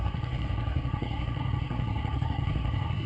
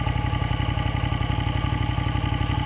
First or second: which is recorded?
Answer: second